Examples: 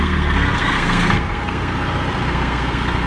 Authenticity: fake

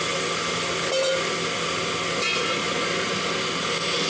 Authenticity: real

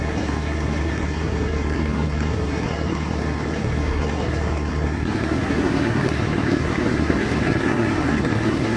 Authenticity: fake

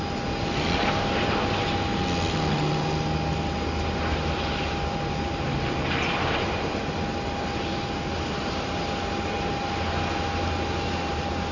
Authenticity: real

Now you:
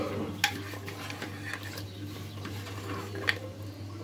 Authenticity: real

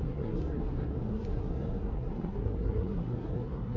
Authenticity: fake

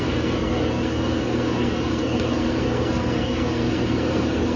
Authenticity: fake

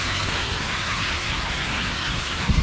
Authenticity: fake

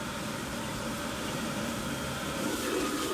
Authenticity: real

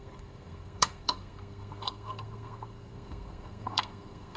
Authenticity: fake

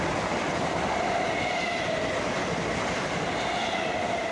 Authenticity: real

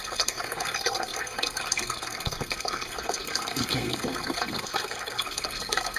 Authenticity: fake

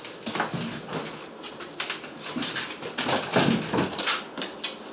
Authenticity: real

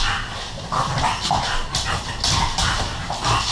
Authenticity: real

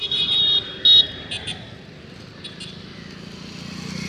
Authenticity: real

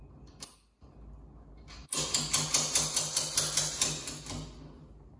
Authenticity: real